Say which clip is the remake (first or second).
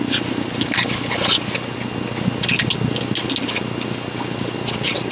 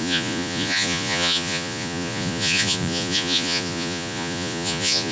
second